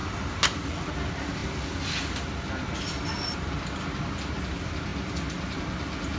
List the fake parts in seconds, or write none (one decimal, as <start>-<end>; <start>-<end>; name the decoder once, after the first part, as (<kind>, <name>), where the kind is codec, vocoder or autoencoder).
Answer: none